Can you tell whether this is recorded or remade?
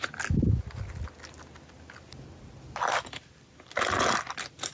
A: recorded